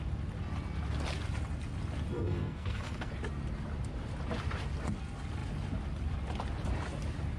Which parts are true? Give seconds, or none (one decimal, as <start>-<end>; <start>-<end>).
0.0-2.1; 3.1-7.4